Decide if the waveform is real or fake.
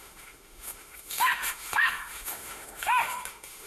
fake